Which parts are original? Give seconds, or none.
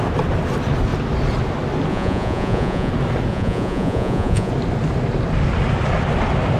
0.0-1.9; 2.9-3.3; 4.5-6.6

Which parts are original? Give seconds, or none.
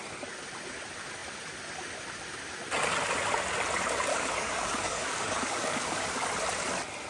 0.0-4.1; 6.3-7.1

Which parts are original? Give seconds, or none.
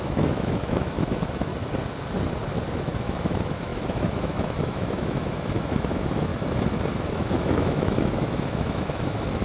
1.5-2.7; 6.3-7.1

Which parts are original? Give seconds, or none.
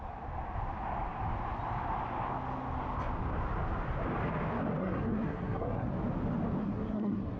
0.0-4.8; 5.9-6.6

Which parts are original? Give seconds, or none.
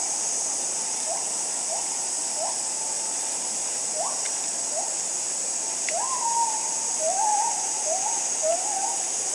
2.2-2.8; 8.4-8.9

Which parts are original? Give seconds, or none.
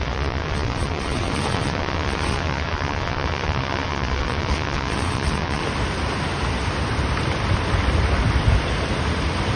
5.6-9.6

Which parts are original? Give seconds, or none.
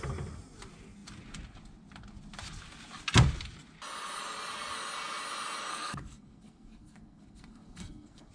0.0-5.7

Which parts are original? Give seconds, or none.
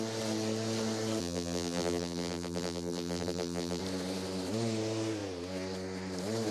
0.0-1.2; 3.8-6.5